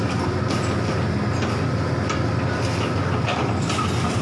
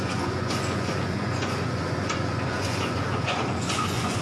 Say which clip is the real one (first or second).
first